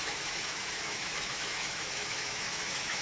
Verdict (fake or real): fake